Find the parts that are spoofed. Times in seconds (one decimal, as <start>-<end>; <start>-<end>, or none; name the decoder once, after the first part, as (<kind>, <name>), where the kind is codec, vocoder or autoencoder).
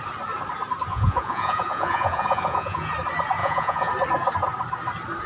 0.9-2.9 (vocoder, Vocos); 3.4-3.9